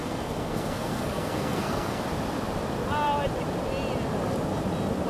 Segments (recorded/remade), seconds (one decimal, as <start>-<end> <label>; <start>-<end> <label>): 0.0-2.0 remade; 2.0-5.1 recorded